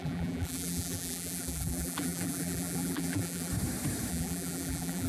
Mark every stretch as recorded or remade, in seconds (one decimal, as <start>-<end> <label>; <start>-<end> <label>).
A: 0.0-3.5 remade; 3.5-4.1 recorded; 4.1-5.1 remade